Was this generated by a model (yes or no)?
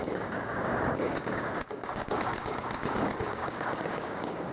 yes